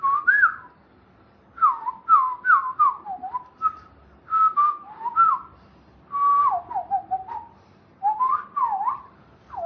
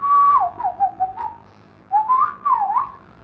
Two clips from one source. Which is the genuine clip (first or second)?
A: first